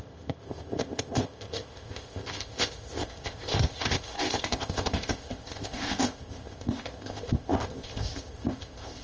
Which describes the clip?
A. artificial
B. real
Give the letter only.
A